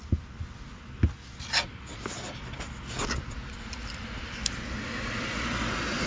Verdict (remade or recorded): recorded